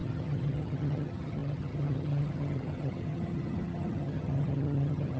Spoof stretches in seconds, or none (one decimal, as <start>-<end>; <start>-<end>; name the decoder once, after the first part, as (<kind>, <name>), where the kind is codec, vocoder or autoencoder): 0.0-5.2 (vocoder, HiFi-GAN)